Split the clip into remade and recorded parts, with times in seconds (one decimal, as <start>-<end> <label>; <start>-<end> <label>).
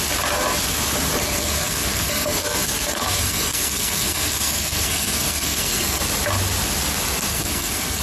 0.0-1.2 recorded; 1.2-6.0 remade; 6.0-7.3 recorded; 7.3-8.0 remade